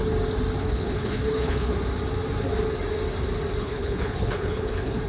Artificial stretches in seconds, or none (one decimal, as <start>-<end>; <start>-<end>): 0.6-1.7; 3.6-5.1